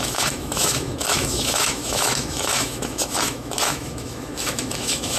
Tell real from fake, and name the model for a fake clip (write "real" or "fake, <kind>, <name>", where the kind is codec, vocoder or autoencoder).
fake, autoencoder, DAC-VAE